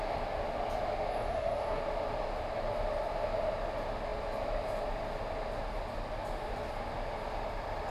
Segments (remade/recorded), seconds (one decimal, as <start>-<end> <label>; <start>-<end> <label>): 0.0-1.1 recorded; 1.1-1.8 remade; 1.8-7.9 recorded

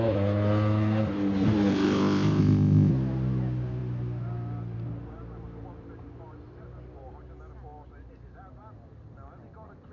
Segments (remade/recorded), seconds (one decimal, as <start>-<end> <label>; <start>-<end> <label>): 0.0-1.7 recorded; 1.7-2.9 remade; 2.9-9.9 recorded

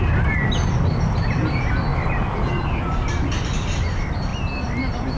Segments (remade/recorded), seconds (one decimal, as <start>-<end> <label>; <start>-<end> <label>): 0.0-1.9 recorded; 1.9-2.8 remade; 2.8-4.3 recorded; 4.3-5.2 remade

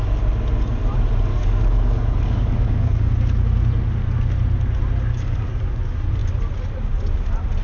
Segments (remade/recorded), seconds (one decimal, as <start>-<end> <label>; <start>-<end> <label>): 0.0-1.3 recorded; 1.3-3.1 remade; 3.1-5.1 recorded; 5.1-5.8 remade; 5.8-7.6 recorded